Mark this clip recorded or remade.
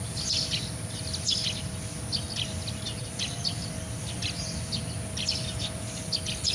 recorded